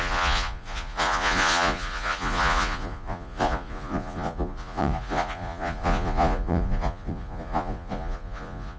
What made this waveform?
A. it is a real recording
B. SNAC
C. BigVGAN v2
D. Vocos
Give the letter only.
D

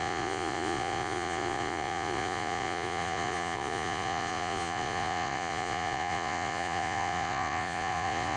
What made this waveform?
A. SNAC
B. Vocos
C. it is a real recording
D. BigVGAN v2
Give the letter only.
B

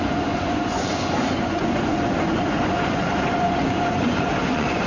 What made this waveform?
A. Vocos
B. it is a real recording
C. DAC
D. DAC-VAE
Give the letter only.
A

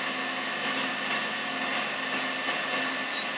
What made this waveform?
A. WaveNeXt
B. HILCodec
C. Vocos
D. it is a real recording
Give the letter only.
D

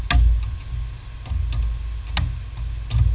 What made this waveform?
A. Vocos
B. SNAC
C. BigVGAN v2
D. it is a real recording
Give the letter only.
D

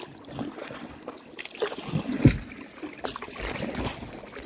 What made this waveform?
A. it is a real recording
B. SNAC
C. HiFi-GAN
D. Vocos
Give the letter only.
A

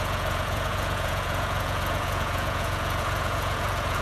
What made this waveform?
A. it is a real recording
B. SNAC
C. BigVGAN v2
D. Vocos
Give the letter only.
D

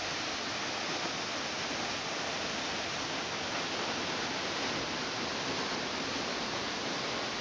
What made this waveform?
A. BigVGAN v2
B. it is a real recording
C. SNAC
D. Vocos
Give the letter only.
B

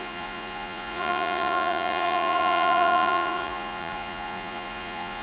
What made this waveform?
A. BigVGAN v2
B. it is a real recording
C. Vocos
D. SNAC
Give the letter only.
C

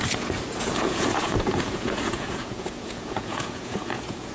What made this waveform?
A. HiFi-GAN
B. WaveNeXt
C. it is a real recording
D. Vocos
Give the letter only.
D